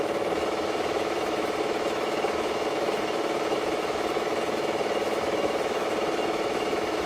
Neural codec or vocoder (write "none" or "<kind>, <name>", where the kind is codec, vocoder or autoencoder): autoencoder, DAC-VAE